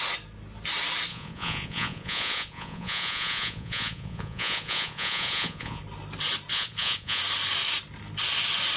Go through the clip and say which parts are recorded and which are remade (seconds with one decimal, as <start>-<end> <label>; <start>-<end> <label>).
0.0-1.1 recorded; 1.1-5.8 remade; 5.8-6.5 recorded; 6.5-7.2 remade; 7.2-8.8 recorded